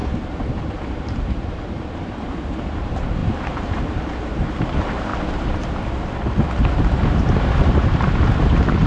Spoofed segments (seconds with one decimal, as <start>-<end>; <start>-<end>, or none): 0.0-5.1; 6.0-8.9

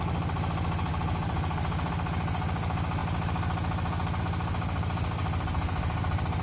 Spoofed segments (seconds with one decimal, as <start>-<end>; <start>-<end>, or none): 0.9-1.9; 5.2-6.4

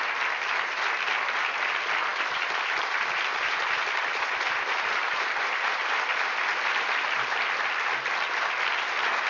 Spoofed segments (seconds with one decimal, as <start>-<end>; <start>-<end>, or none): 2.1-6.4

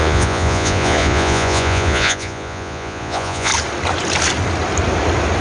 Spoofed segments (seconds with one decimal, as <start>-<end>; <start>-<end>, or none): 0.0-3.5

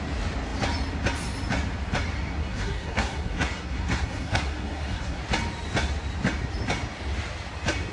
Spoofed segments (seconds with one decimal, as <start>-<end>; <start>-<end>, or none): 2.4-5.2

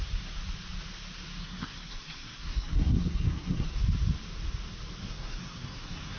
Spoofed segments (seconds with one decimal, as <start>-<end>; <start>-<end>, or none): 1.4-3.8; 5.0-6.2